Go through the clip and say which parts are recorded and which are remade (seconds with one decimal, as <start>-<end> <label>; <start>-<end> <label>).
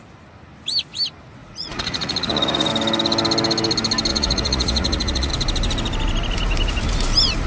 0.0-1.4 recorded; 1.4-2.7 remade; 2.7-4.1 recorded; 4.1-5.3 remade; 5.3-7.5 recorded